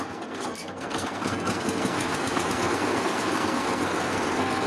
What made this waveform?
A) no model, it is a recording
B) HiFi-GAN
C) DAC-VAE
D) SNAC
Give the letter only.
D